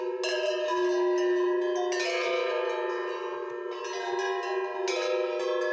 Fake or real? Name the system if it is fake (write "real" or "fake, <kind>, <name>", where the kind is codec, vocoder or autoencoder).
real